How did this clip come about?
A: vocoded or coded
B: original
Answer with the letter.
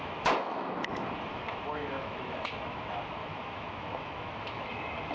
A